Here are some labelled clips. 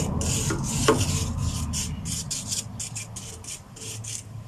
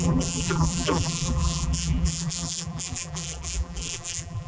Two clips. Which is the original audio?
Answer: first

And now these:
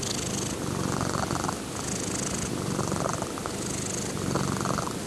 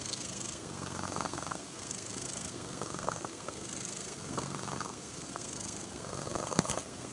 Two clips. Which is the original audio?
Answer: first